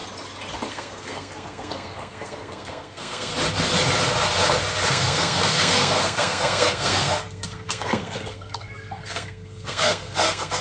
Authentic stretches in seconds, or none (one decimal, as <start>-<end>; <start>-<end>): 0.0-0.7; 3.3-4.9